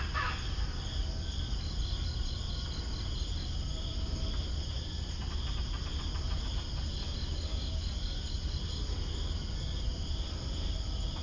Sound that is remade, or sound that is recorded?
recorded